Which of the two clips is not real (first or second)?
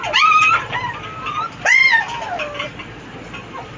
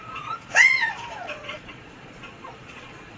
second